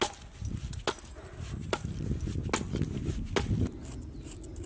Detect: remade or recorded recorded